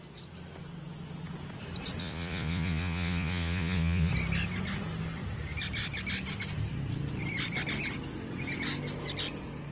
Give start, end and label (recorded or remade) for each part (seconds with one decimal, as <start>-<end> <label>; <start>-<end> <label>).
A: 0.0-2.0 recorded; 2.0-4.1 remade; 4.1-9.7 recorded